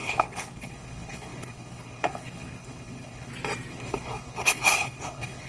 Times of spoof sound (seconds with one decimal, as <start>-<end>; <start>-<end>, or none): 0.0-3.3; 3.7-5.5